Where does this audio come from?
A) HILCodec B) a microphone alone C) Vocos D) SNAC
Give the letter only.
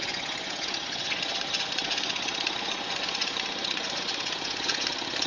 C